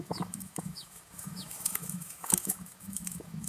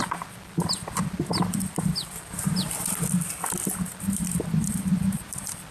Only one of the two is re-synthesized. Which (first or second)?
first